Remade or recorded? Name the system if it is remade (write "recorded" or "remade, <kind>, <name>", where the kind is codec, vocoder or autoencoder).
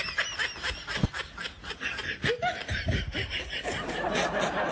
recorded